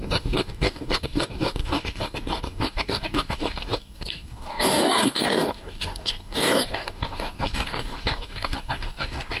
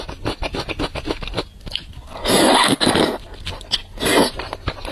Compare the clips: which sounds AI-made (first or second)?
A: first